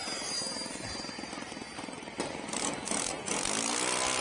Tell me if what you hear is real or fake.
real